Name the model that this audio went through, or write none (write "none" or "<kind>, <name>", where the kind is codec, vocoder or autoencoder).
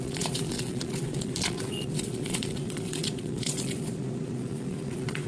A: vocoder, Vocos